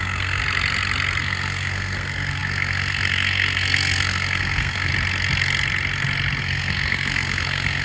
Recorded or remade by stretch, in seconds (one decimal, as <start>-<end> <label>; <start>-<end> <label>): 0.0-0.4 remade; 0.4-1.2 recorded; 1.2-4.9 remade; 4.9-6.4 recorded; 6.4-7.8 remade